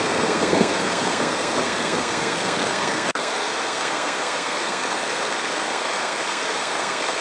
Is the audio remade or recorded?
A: remade